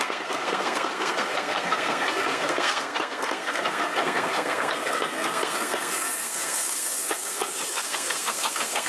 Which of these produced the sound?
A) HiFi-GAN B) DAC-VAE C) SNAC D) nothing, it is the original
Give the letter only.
C